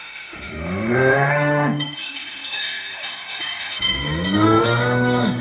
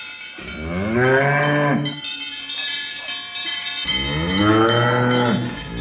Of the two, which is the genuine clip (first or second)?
second